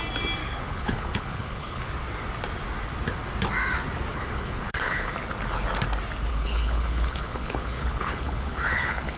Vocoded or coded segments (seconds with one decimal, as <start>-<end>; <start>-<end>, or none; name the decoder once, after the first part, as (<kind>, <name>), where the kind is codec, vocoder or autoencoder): 0.4-1.9 (codec, HILCodec); 4.1-5.1; 6.3-9.2